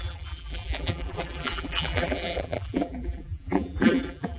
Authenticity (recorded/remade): remade